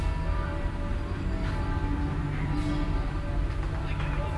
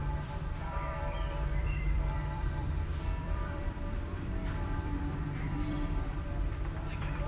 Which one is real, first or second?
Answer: first